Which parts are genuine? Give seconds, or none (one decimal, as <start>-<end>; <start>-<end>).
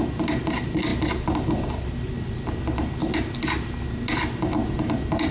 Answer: 0.0-5.3